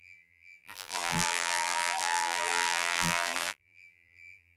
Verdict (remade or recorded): remade